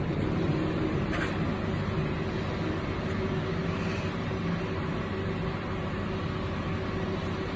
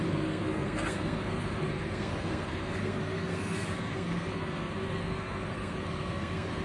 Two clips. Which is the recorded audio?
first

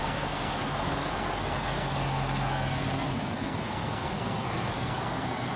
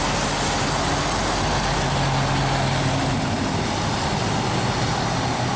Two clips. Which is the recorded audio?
second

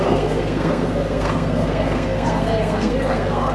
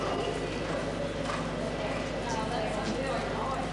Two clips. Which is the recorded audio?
second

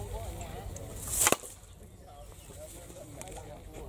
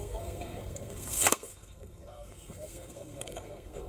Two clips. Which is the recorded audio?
first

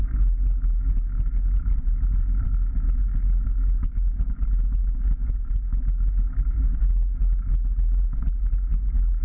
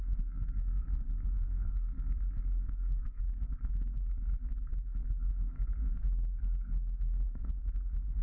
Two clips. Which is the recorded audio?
first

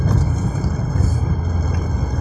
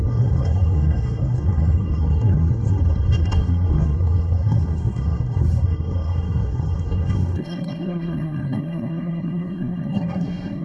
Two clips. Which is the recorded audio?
first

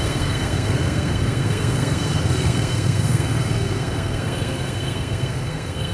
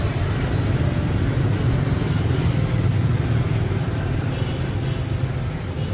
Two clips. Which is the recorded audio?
second